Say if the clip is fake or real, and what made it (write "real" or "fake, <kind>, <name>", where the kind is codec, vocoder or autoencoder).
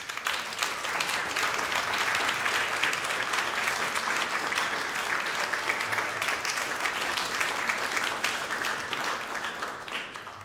real